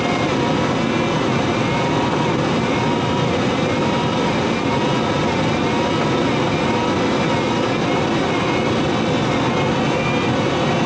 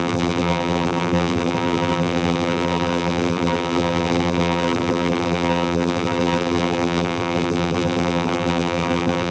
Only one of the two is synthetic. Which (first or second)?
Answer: second